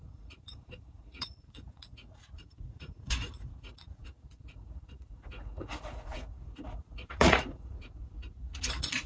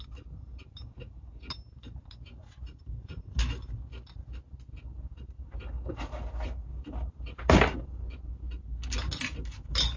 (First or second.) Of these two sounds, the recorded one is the second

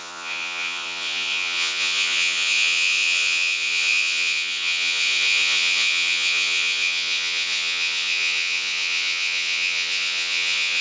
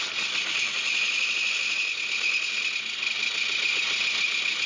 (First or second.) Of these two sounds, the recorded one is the second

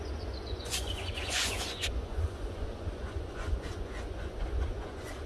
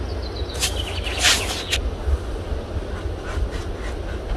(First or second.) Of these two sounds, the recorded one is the second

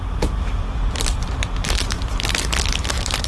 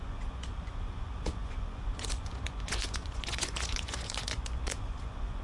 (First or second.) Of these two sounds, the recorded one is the first